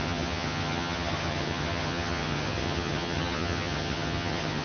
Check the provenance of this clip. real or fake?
fake